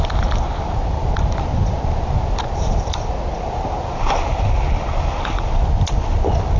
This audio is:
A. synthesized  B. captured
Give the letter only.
B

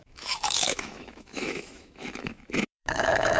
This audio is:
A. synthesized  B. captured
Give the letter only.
A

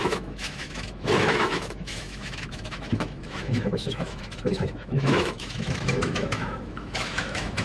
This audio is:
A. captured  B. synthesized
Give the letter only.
B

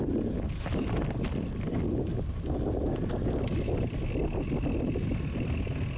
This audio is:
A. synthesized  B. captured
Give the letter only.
B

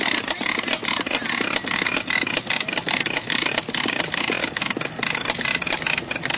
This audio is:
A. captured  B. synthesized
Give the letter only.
A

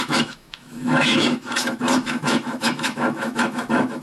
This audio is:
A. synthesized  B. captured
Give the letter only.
A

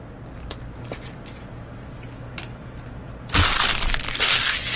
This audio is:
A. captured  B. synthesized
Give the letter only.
A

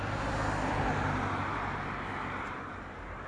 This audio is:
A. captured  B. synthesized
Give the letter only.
A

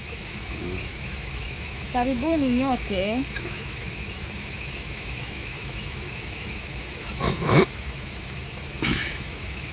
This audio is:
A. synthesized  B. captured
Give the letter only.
A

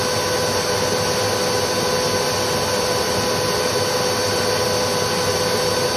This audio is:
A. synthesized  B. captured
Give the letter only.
B